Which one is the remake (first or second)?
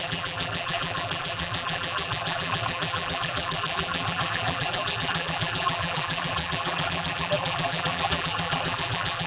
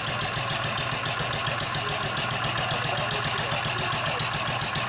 first